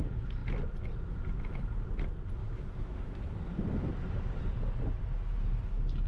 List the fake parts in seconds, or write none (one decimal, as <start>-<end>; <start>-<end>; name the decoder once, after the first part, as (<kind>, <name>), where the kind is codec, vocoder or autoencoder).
2.4-3.2 (autoencoder, DAC-VAE)